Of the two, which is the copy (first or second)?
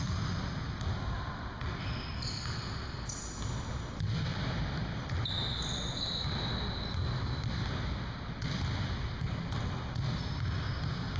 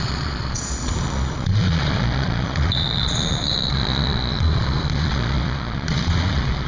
second